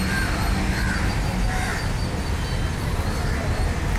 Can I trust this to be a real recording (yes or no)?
yes